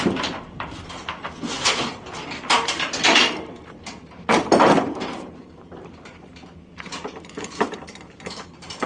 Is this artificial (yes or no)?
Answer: yes